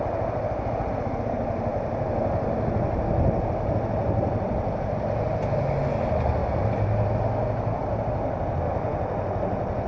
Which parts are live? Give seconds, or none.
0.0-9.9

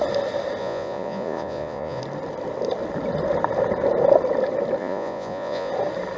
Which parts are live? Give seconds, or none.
0.0-0.6; 2.0-4.8; 5.7-6.2